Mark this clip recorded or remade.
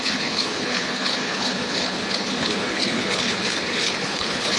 remade